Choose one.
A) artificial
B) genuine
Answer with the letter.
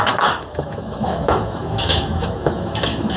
A